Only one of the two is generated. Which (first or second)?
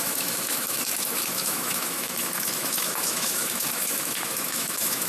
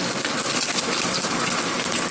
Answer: first